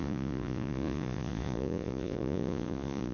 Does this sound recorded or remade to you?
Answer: remade